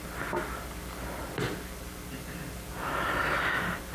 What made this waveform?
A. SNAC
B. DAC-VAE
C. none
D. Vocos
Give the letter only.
C